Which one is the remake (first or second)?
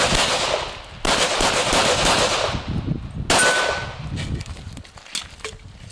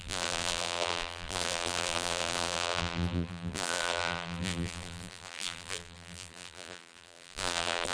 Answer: second